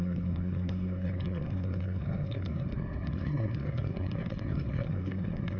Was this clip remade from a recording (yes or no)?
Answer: yes